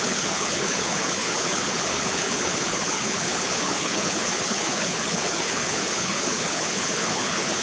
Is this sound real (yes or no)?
no